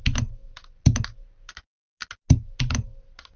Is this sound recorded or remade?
recorded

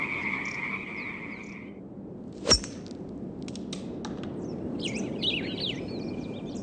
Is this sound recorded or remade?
recorded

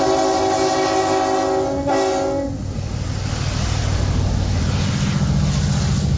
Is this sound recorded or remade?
recorded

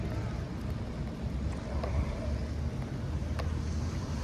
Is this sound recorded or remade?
recorded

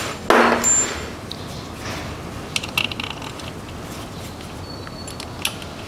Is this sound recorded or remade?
recorded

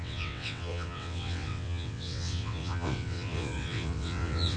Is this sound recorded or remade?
remade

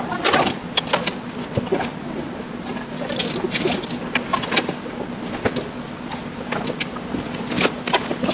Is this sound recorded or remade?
recorded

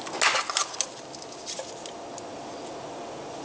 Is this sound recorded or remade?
recorded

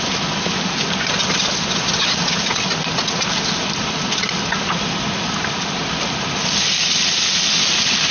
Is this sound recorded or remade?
recorded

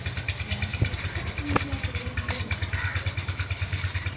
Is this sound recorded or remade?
recorded